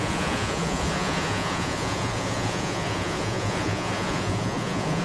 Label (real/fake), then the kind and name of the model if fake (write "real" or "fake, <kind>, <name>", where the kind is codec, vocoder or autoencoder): fake, vocoder, Vocos